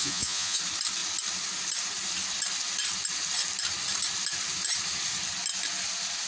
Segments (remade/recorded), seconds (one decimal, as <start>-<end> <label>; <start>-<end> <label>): 0.0-0.6 remade; 0.6-6.3 recorded